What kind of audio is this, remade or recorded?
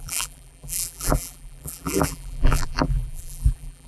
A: remade